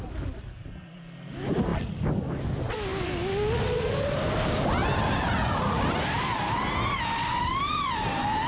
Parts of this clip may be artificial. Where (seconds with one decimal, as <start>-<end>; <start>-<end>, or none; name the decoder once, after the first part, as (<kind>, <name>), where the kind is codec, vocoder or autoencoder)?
1.7-2.2 (vocoder, BigVGAN v2); 4.8-6.7